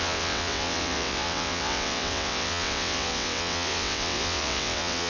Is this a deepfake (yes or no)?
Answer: yes